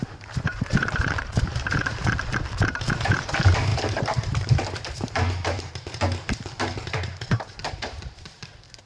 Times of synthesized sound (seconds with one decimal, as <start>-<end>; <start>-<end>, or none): 0.0-8.9